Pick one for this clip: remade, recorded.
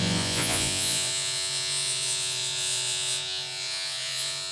remade